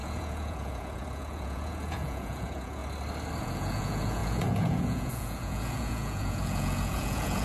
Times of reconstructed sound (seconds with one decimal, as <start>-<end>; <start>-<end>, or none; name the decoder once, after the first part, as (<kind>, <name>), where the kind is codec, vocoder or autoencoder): 0.0-2.8 (vocoder, Vocos); 3.4-7.4